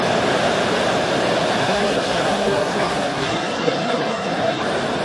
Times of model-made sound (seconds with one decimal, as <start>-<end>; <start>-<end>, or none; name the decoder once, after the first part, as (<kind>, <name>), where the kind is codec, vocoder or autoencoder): 1.6-4.6 (codec, SNAC)